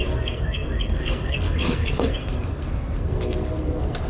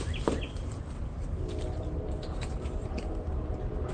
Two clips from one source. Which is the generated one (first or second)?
first